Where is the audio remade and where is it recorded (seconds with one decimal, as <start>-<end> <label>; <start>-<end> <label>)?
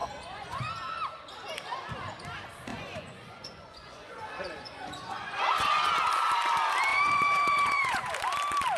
0.0-0.7 remade; 0.7-2.7 recorded; 2.7-5.9 remade; 5.9-6.9 recorded; 6.9-8.1 remade; 8.1-8.8 recorded